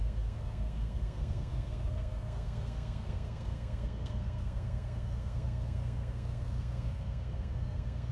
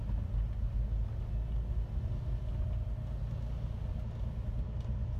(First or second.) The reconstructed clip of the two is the first